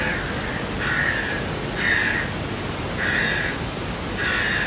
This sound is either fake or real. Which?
real